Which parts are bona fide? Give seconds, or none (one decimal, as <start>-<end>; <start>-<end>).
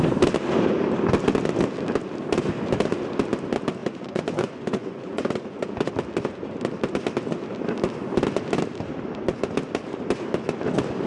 0.0-3.8; 5.9-11.1